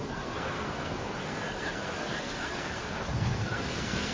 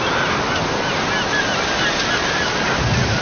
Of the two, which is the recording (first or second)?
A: second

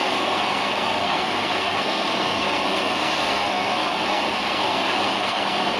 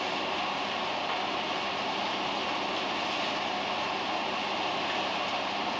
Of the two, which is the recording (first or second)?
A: second